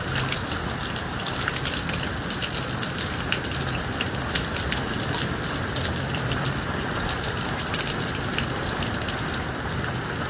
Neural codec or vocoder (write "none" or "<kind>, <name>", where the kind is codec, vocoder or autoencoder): vocoder, BigVGAN v2